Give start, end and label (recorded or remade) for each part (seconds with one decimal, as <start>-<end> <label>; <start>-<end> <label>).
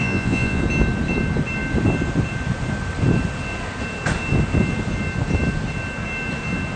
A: 0.0-0.6 remade; 0.6-6.8 recorded